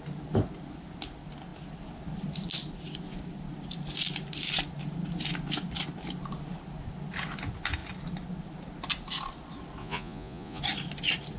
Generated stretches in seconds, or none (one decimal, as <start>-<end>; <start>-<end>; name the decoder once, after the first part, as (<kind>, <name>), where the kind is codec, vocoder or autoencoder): 9.8-10.6 (vocoder, Vocos)